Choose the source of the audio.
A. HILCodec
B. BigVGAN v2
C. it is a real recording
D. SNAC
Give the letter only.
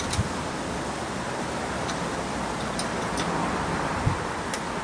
C